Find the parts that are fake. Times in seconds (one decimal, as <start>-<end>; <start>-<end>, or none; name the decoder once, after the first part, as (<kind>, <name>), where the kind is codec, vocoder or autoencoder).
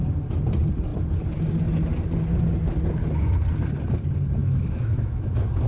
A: 4.4-5.3 (autoencoder, DAC-VAE)